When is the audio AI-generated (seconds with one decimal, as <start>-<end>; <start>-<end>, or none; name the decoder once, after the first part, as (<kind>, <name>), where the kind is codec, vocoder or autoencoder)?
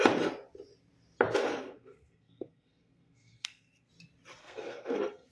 1.6-3.9 (codec, SNAC); 4.4-5.3